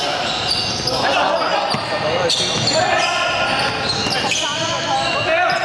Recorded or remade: recorded